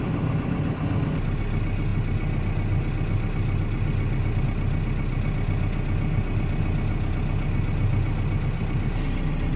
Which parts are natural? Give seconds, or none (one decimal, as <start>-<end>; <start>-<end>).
0.0-9.6